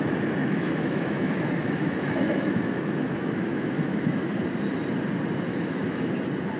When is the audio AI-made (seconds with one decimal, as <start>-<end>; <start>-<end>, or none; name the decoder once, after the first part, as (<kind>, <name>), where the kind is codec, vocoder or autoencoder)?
0.4-4.4 (autoencoder, DAC-VAE); 5.5-6.1